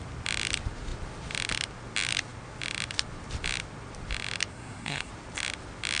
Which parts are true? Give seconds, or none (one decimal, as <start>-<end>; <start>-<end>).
0.0-4.5; 5.1-6.0